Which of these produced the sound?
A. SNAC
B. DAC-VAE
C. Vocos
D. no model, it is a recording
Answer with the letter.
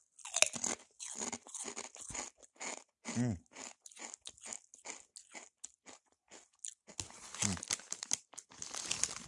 D